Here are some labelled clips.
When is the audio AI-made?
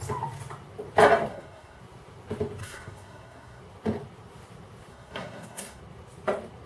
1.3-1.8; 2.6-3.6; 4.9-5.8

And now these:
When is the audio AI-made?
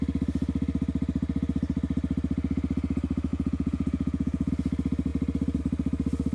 3.3-4.5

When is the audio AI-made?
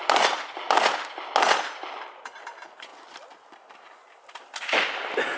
none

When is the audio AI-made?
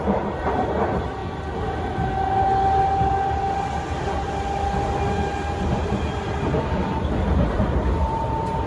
0.0-1.2; 6.2-8.7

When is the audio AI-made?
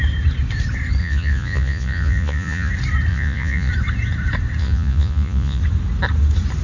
1.0-2.7; 3.1-3.7; 4.6-5.6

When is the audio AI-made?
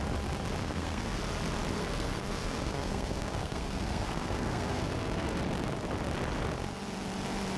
0.6-1.2; 1.8-5.4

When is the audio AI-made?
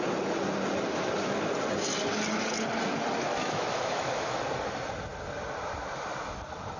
3.3-4.4